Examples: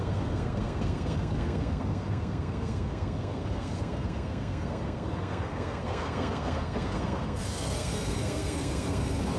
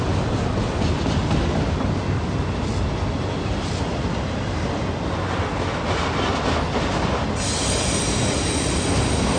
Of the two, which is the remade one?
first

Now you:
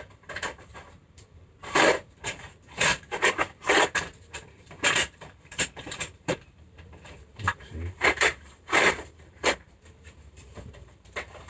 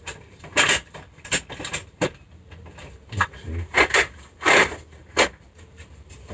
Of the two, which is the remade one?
first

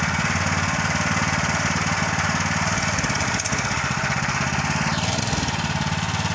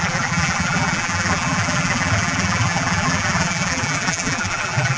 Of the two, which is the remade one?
second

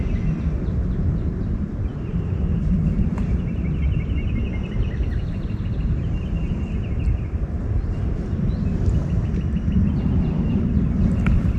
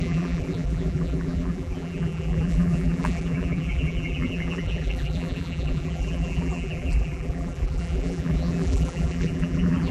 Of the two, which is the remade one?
second